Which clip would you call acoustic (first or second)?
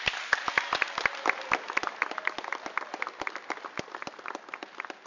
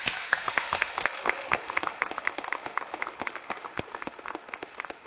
first